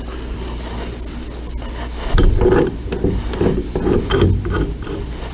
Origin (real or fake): real